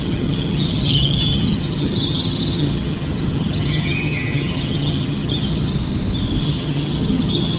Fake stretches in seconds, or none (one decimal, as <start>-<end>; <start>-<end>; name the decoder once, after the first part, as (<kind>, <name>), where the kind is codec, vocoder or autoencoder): 0.0-5.7 (vocoder, HiFi-GAN); 6.4-7.6